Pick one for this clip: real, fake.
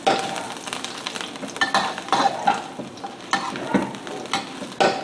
real